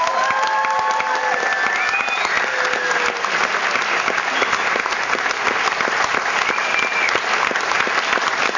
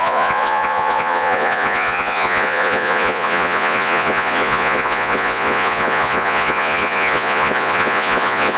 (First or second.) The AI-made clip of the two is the second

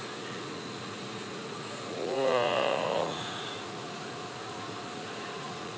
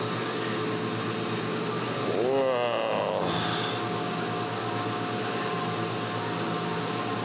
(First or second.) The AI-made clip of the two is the first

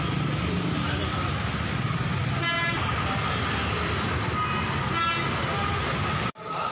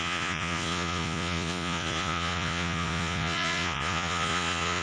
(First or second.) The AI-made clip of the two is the second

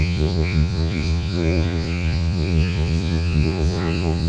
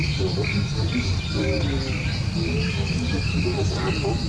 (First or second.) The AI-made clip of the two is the first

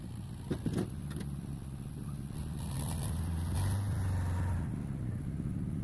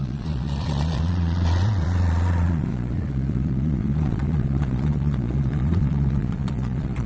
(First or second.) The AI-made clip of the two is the second